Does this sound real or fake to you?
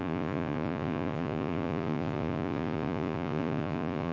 fake